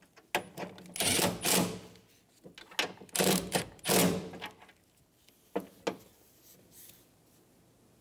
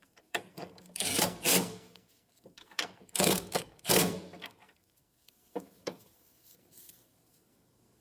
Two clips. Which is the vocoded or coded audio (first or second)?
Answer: second